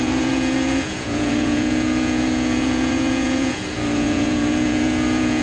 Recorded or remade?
remade